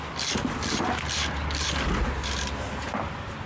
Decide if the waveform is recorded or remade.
recorded